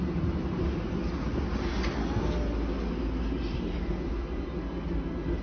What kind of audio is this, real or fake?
real